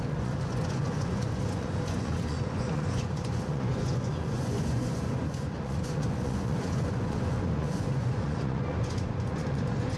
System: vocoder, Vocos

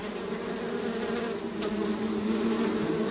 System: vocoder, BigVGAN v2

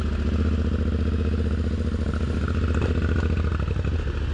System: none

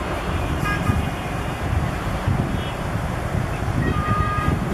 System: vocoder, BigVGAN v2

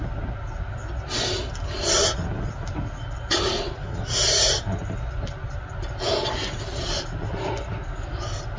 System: none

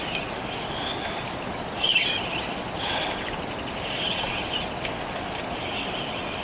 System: none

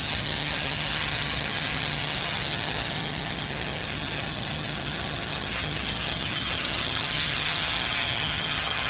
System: vocoder, HiFi-GAN